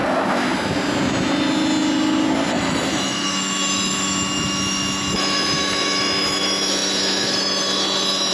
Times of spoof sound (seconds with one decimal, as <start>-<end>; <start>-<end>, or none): 2.5-8.3